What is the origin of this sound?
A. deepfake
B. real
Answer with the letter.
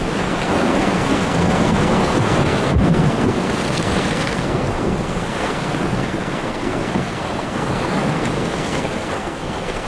A